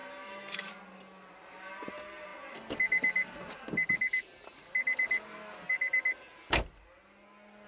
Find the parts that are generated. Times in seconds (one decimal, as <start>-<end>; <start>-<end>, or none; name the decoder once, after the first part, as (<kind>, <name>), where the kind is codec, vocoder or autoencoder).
0.0-0.7 (autoencoder, DAC-VAE)